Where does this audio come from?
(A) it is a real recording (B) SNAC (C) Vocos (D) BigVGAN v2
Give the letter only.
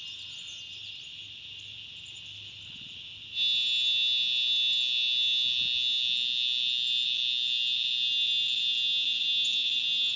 A